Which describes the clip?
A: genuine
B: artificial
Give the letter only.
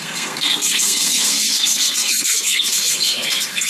B